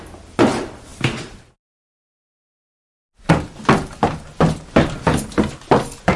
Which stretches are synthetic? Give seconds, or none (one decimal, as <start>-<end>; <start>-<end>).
none